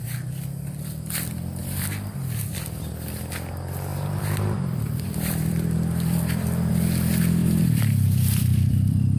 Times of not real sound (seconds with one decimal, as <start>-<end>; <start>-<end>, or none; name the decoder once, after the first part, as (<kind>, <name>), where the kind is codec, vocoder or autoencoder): 1.6-2.8 (vocoder, BigVGAN v2); 3.9-6.7; 7.4-9.2